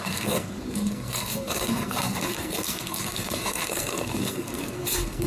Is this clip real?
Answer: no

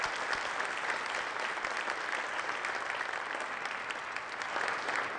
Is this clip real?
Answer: yes